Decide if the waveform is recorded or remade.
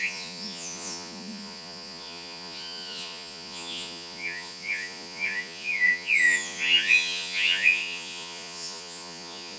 remade